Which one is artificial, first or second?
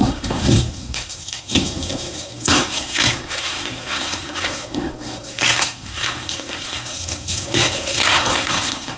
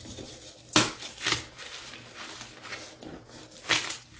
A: first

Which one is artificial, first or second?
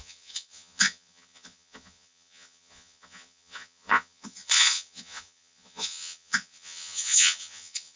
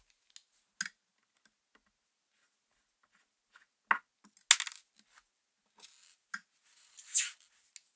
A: first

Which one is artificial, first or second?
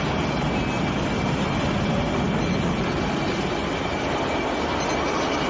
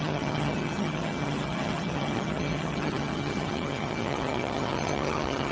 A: second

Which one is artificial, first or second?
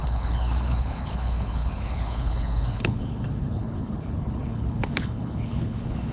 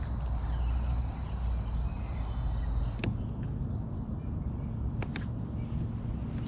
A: first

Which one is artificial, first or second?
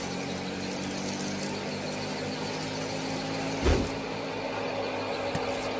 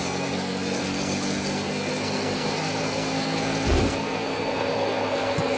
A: second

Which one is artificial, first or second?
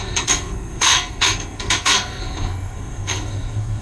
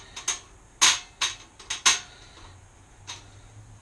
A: first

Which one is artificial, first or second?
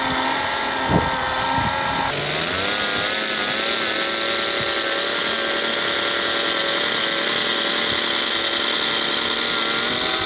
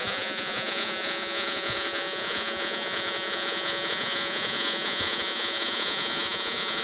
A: second